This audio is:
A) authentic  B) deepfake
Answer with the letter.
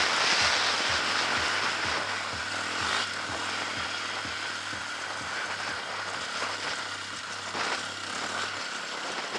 A